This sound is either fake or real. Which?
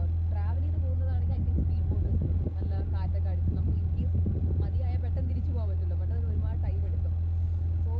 real